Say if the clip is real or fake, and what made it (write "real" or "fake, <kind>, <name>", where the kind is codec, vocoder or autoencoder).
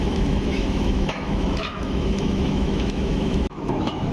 fake, autoencoder, DAC-VAE